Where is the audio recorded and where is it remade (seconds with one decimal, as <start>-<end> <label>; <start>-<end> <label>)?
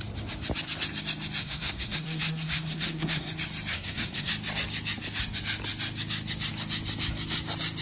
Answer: 0.0-1.4 recorded; 1.4-3.3 remade; 3.3-3.7 recorded; 3.7-4.3 remade; 4.3-7.8 recorded